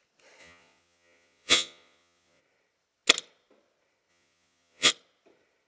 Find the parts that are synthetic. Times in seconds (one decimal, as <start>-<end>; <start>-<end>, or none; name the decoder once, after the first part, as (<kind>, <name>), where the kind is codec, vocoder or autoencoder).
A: 0.4-2.4 (vocoder, Vocos); 4.1-4.9